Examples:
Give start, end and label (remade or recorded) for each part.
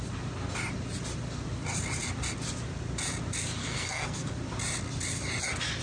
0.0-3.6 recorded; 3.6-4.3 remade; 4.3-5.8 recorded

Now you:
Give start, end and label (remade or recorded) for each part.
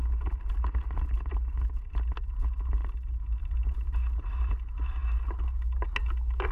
0.0-6.5 recorded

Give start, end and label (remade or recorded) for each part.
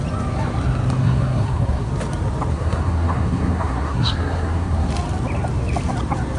0.0-1.0 recorded; 1.0-1.9 remade; 1.9-2.5 recorded; 2.5-4.9 remade; 4.9-6.4 recorded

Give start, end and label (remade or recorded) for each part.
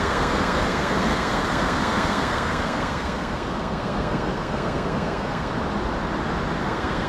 0.0-5.5 remade; 5.5-6.6 recorded; 6.6-7.1 remade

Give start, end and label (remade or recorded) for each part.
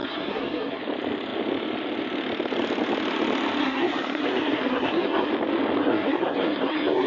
0.0-0.8 remade; 0.8-3.6 recorded; 3.6-5.3 remade; 5.3-5.8 recorded; 5.8-7.1 remade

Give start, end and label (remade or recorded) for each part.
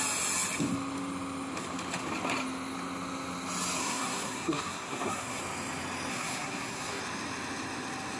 0.0-3.8 recorded; 3.8-5.4 remade; 5.4-6.1 recorded; 6.1-7.0 remade; 7.0-8.2 recorded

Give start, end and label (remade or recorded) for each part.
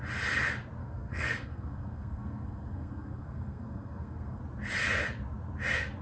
0.0-0.8 recorded; 0.8-4.4 remade; 4.4-6.0 recorded